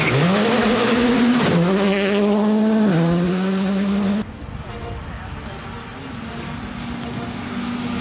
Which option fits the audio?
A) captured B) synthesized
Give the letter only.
A